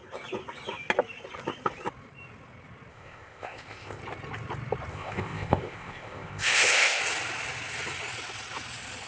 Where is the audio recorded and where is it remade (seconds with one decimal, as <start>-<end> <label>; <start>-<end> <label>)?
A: 0.0-2.9 recorded; 2.9-4.0 remade; 4.0-4.9 recorded; 4.9-7.0 remade; 7.0-9.1 recorded